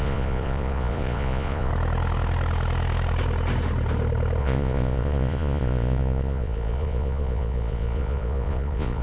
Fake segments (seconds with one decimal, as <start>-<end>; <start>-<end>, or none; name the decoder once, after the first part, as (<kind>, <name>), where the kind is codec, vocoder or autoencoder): 0.0-1.7 (vocoder, Vocos); 4.4-9.0